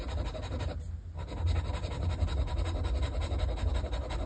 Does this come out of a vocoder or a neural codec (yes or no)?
no